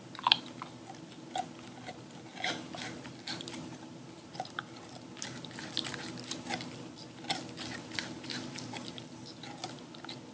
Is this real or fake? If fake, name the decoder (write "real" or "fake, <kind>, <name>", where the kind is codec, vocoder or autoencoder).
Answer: real